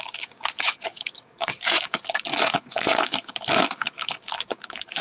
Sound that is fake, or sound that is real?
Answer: fake